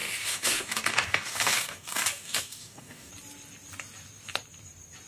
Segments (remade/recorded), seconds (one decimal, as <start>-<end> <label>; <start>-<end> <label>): 0.0-3.1 remade; 3.1-5.1 recorded